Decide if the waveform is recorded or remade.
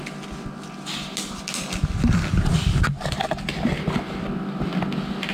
recorded